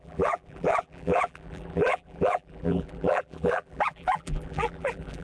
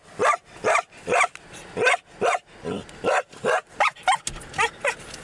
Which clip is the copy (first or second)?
first